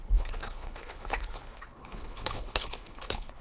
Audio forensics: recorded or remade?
remade